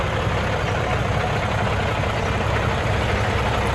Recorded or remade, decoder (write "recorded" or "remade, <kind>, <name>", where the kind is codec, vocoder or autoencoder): recorded